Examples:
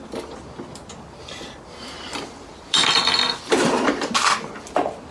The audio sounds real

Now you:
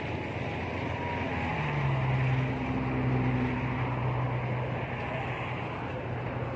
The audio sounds real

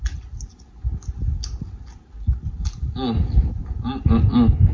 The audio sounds real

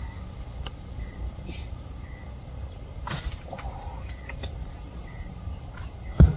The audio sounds real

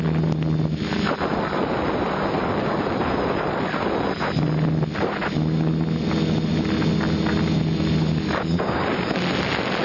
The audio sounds real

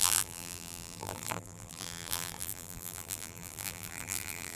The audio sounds fake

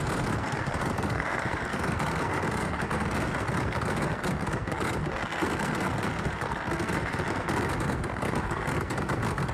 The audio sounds fake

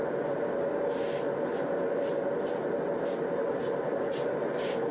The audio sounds real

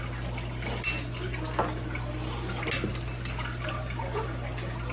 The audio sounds real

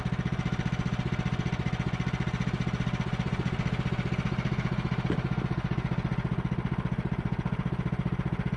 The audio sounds real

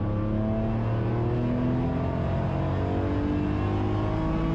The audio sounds real